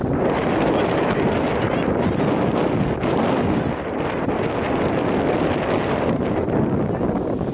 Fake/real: real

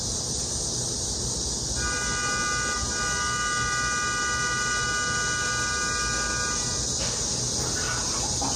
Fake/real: real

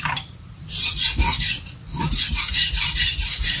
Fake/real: real